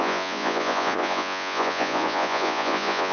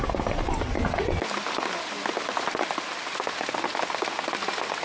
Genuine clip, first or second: second